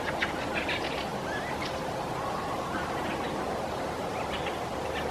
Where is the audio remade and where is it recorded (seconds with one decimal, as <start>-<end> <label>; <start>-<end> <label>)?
0.0-5.1 recorded